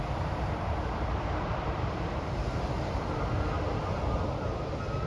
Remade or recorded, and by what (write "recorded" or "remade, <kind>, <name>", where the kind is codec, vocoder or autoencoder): recorded